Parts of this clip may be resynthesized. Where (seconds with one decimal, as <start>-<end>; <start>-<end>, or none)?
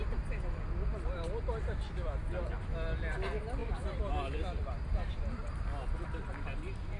none